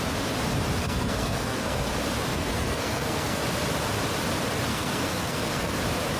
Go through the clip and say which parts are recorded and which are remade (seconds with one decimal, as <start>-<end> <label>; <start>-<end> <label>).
0.0-0.8 recorded; 0.8-1.9 remade; 1.9-2.3 recorded; 2.3-3.4 remade; 3.4-4.7 recorded; 4.7-5.8 remade; 5.8-6.2 recorded

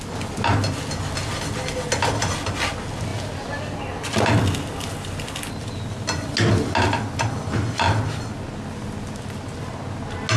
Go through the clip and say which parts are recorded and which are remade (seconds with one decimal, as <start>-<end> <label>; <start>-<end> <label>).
0.0-10.4 recorded

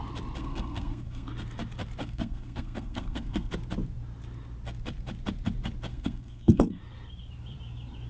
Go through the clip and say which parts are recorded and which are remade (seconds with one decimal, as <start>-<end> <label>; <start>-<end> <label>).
0.0-0.4 recorded; 0.4-1.3 remade; 1.3-2.0 recorded; 2.0-3.5 remade; 3.5-5.9 recorded; 5.9-6.8 remade; 6.8-8.1 recorded

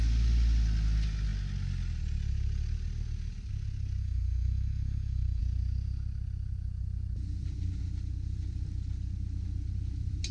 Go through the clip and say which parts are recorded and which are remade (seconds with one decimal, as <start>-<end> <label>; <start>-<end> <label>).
0.0-4.0 recorded; 4.0-5.4 remade; 5.4-10.3 recorded

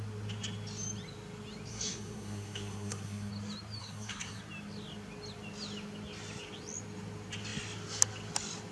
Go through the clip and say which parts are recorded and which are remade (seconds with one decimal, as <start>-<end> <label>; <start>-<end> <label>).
0.0-1.7 recorded; 1.7-3.3 remade; 3.3-3.8 recorded; 3.8-4.4 remade; 4.4-8.7 recorded

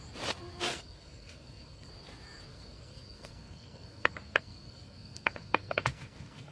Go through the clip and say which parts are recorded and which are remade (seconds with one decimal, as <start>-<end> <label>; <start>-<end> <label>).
0.0-0.7 recorded; 0.7-1.9 remade; 1.9-2.5 recorded; 2.5-6.5 remade

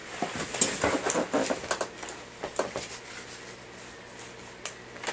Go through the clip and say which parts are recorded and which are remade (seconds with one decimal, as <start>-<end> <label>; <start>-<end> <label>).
0.0-5.1 recorded

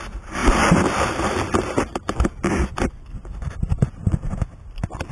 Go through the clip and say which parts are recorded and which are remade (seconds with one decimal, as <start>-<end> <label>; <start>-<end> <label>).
0.0-5.1 recorded